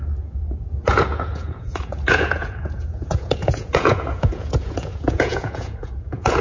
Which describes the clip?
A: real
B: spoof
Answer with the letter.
B